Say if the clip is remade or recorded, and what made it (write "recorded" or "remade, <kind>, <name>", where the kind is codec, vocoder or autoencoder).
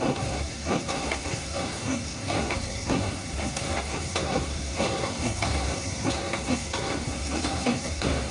remade, codec, SNAC